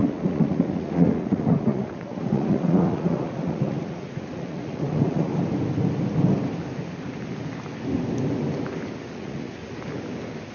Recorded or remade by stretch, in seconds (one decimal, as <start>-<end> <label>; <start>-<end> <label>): 0.0-5.3 remade; 5.3-9.1 recorded; 9.1-9.6 remade; 9.6-10.5 recorded